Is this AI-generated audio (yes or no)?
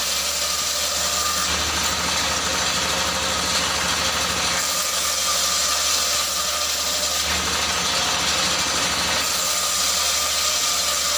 no